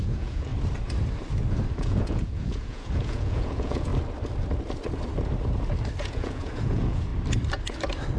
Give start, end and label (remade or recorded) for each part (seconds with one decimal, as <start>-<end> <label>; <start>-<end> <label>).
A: 0.0-0.5 remade; 0.5-1.8 recorded; 1.8-3.9 remade; 3.9-6.0 recorded; 6.0-7.1 remade; 7.1-8.2 recorded